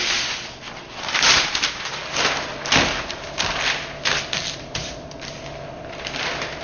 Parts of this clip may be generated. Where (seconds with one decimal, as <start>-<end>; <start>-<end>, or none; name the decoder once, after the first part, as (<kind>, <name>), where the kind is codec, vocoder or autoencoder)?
0.0-2.0 (vocoder, BigVGAN v2); 4.4-6.6